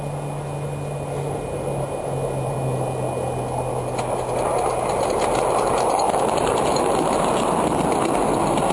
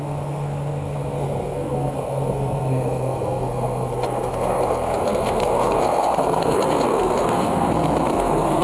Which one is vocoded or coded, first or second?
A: second